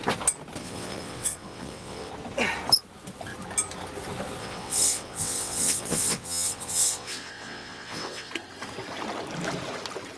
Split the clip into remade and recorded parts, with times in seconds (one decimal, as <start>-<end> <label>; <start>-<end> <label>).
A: 0.0-0.6 recorded; 0.6-2.1 remade; 2.1-4.4 recorded; 4.4-8.3 remade; 8.3-10.2 recorded